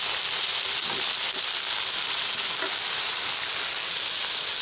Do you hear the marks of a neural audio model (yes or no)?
no